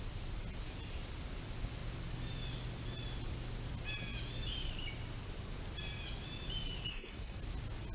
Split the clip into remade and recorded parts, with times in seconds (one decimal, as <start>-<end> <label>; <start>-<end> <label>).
0.0-6.9 recorded; 6.9-7.4 remade; 7.4-7.9 recorded